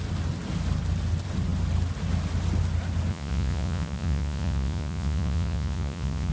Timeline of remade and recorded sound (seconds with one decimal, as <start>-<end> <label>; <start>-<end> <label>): 0.0-3.1 recorded; 3.1-6.3 remade